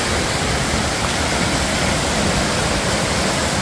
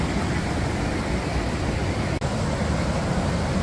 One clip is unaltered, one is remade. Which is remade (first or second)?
first